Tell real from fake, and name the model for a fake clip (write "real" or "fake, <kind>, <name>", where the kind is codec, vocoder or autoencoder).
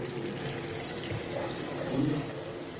real